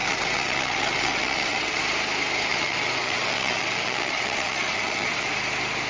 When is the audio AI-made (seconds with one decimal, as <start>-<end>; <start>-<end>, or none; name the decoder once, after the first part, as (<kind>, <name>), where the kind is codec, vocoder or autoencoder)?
0.0-1.8 (vocoder, WaveNeXt); 2.5-5.3